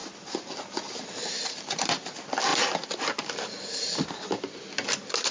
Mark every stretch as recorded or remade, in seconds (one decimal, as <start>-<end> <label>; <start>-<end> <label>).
0.0-5.3 recorded